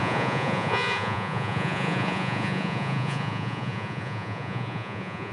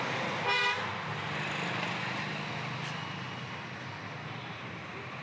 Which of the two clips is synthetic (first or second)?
first